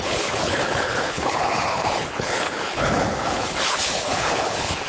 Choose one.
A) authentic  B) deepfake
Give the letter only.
B